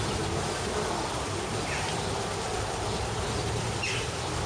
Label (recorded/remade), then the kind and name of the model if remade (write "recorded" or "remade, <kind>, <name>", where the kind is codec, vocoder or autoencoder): recorded